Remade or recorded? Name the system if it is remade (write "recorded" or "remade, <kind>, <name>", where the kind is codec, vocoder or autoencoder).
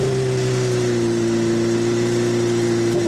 recorded